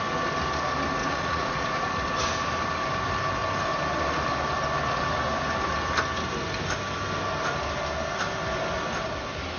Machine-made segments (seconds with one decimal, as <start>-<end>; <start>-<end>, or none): 1.0-1.8